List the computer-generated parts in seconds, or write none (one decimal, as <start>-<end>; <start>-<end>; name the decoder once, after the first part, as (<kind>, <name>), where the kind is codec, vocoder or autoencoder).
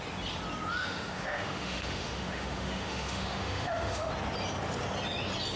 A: 0.8-4.1 (autoencoder, DAC-VAE)